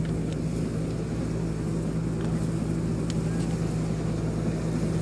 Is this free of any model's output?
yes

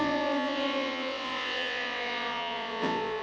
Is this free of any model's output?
no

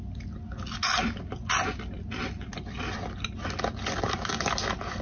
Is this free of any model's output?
yes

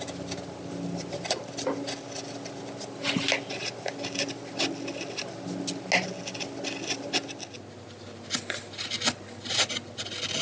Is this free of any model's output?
yes